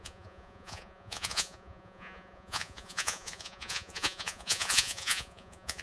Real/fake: fake